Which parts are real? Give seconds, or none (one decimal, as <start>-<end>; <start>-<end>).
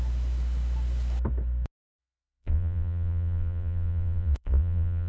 0.0-2.0